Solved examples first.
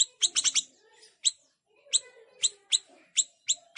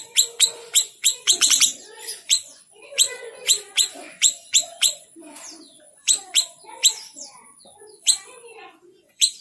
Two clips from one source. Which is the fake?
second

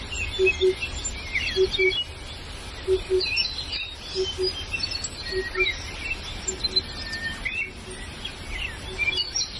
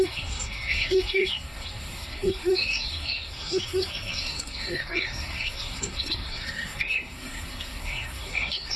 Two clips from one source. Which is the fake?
second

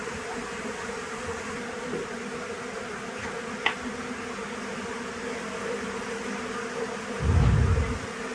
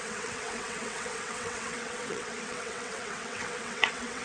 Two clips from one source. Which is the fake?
second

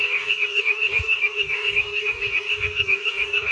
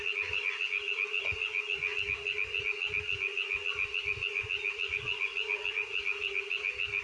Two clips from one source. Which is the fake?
first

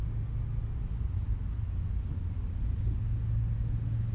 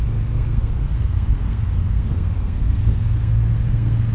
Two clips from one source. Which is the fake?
second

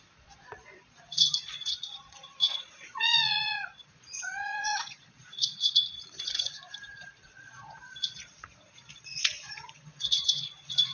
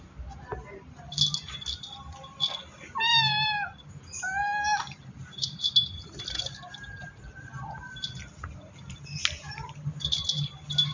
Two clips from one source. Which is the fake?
first